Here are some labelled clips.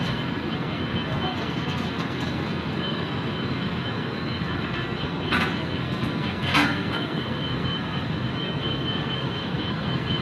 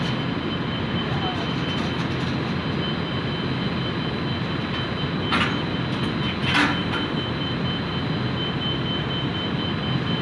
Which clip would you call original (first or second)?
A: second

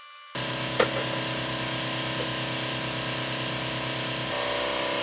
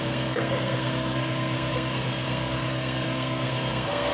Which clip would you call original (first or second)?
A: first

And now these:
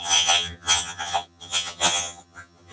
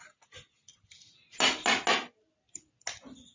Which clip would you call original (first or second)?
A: second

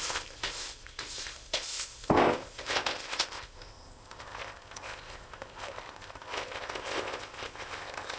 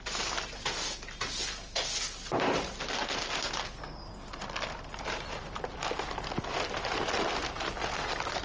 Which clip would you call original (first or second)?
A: second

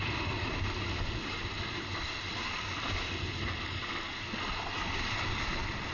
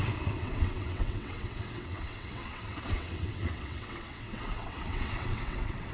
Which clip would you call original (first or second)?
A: first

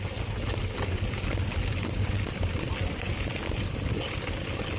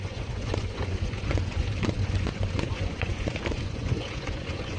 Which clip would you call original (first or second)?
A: first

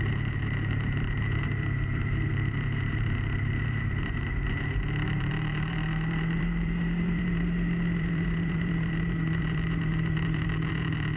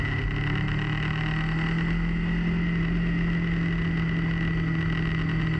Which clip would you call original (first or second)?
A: second